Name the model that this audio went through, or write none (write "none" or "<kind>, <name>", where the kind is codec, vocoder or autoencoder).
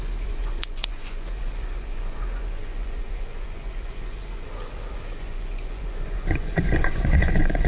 vocoder, Vocos